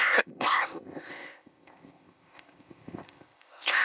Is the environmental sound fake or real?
fake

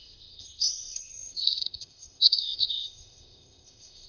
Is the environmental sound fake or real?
fake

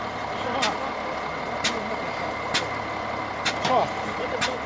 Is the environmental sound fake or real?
real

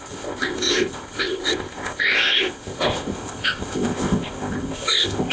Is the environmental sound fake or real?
fake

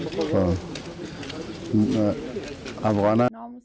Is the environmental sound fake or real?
real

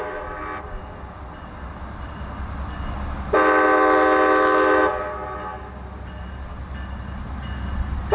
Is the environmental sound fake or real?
real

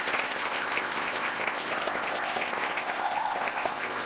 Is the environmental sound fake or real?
fake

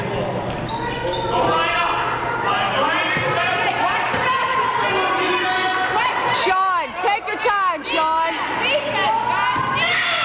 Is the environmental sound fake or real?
real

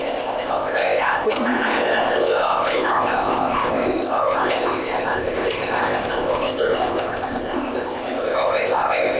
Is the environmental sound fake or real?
fake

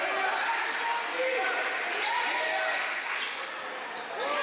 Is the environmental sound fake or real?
real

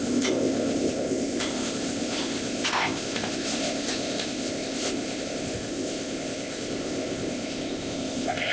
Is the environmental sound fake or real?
fake